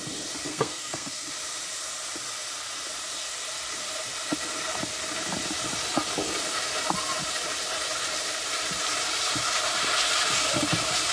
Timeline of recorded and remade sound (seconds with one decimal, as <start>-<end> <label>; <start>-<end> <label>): 0.0-0.5 recorded; 0.5-1.3 remade; 1.3-11.1 recorded